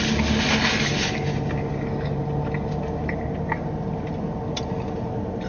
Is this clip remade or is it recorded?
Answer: recorded